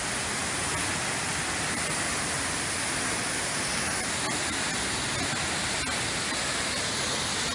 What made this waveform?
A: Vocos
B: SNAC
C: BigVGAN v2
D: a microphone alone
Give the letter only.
D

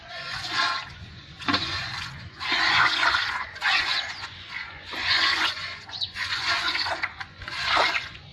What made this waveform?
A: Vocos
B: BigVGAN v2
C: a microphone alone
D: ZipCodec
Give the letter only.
A